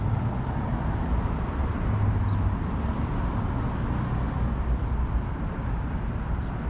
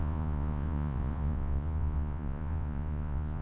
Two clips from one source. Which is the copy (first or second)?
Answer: second